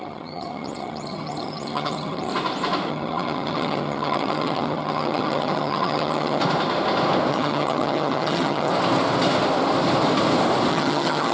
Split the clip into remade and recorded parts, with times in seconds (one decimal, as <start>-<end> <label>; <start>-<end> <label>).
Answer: 0.0-2.3 remade; 2.3-2.9 recorded; 2.9-6.4 remade; 6.4-7.3 recorded; 7.3-8.7 remade; 8.7-10.7 recorded; 10.7-11.3 remade